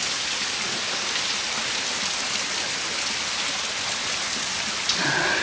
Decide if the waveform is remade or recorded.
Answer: recorded